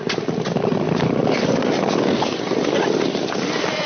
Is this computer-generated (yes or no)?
no